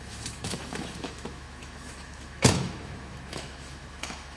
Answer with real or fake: fake